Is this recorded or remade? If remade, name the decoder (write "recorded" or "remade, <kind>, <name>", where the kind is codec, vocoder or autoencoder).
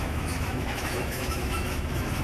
remade, autoencoder, DAC-VAE